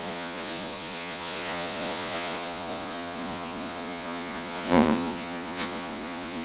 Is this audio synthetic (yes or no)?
yes